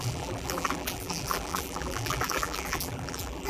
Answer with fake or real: fake